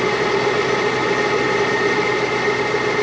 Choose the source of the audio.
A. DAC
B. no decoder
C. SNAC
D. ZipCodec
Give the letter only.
B